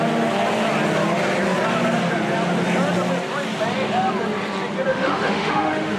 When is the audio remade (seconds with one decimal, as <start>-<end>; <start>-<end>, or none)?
4.9-6.0